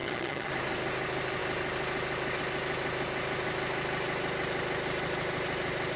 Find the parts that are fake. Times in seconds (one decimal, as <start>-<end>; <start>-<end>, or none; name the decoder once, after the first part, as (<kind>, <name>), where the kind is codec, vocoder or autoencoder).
0.0-0.5 (vocoder, HiFi-GAN)